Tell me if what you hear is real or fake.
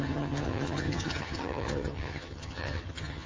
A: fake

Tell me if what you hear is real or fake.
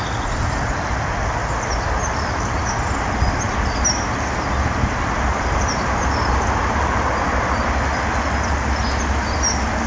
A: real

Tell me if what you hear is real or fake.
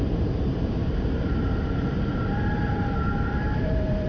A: fake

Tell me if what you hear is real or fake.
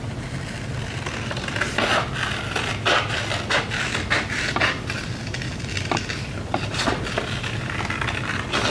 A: real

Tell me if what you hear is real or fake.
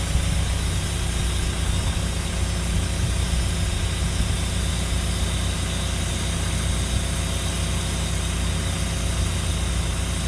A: real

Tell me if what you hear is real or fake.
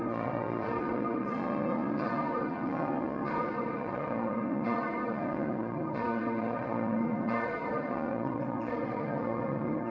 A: fake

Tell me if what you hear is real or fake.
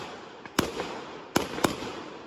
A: real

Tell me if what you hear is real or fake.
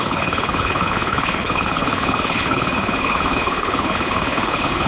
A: fake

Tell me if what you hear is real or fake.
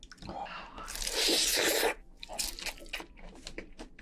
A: real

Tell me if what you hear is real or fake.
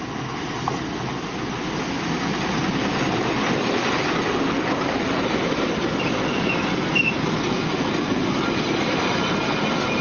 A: real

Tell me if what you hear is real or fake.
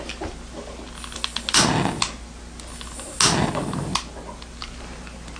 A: real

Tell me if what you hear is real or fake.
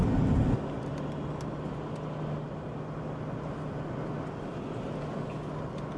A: real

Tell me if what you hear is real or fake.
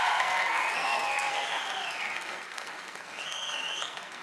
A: fake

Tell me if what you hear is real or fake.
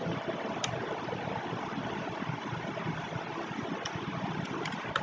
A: real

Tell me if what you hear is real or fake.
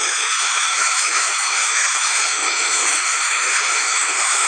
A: fake